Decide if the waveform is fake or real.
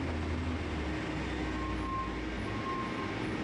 real